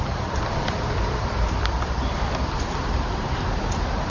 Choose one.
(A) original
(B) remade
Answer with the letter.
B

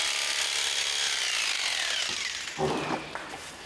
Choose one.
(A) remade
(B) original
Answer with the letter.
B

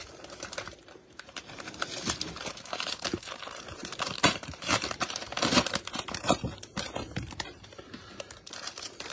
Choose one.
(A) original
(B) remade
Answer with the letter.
B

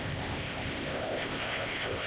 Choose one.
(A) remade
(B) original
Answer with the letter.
A